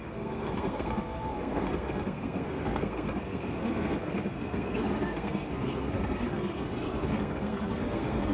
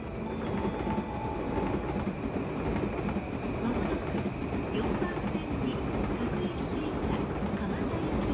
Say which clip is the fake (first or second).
first